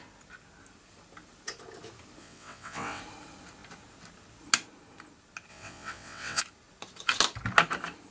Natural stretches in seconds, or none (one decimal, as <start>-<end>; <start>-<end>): 0.0-2.2; 3.0-5.5; 6.4-8.1